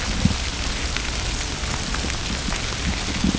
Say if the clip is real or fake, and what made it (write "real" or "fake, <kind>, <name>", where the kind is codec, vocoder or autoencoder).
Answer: real